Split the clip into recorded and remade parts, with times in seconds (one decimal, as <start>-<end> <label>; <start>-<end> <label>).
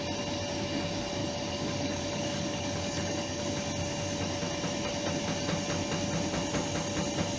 0.0-1.2 recorded; 1.2-3.4 remade; 3.4-7.4 recorded